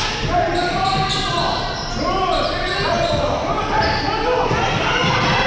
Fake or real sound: real